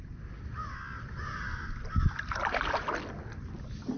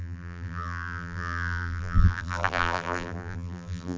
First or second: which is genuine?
first